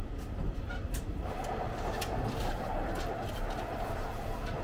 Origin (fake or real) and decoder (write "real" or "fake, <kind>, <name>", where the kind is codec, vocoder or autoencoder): real